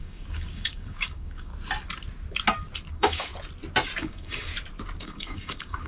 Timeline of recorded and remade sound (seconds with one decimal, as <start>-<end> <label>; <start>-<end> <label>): 0.0-1.5 remade; 1.5-2.9 recorded; 2.9-3.3 remade; 3.3-4.0 recorded; 4.0-4.5 remade; 4.5-5.0 recorded; 5.0-5.9 remade